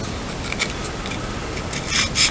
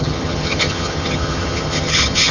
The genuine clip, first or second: first